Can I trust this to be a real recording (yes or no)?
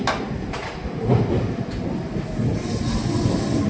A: yes